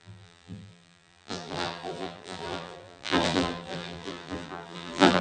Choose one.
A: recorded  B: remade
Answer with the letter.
B